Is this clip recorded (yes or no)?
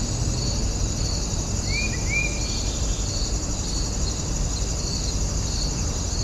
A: yes